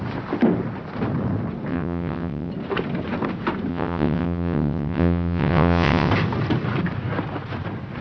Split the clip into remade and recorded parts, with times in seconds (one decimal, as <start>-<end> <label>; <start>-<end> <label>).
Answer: 0.0-1.7 recorded; 1.7-2.5 remade; 2.5-3.7 recorded; 3.7-6.1 remade; 6.1-8.0 recorded